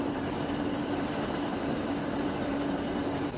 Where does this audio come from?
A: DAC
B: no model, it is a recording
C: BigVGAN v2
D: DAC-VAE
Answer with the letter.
C